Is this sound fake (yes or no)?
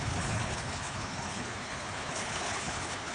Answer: yes